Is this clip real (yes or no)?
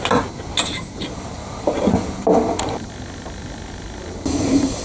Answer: yes